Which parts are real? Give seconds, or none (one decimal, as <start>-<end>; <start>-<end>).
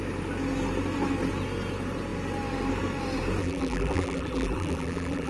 0.0-3.4